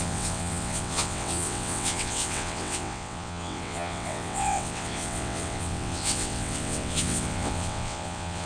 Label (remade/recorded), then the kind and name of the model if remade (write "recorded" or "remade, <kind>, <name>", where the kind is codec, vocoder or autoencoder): remade, vocoder, WaveNeXt